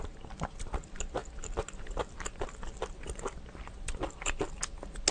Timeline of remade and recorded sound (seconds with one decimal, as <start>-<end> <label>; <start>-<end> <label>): 0.0-5.1 recorded